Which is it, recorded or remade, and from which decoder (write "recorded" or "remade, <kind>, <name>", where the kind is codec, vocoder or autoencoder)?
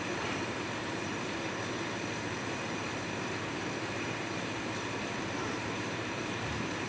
remade, vocoder, BigVGAN v2